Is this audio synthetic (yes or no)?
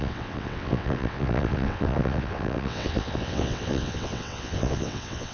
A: yes